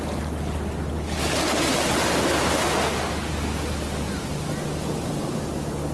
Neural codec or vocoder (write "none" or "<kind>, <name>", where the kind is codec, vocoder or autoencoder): none